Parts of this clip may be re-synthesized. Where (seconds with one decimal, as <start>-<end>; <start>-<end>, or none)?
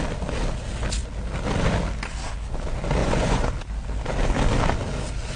3.0-3.5